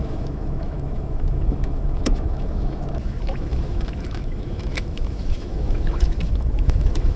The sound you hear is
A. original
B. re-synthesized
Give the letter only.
B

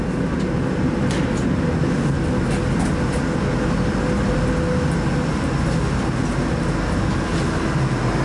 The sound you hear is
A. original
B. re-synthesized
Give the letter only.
A